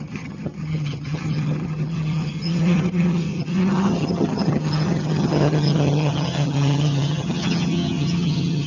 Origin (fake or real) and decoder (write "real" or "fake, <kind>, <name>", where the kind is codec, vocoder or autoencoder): fake, vocoder, HiFi-GAN